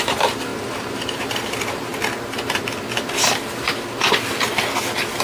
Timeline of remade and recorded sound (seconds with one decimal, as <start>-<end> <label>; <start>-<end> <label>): 0.0-1.9 remade; 1.9-5.2 recorded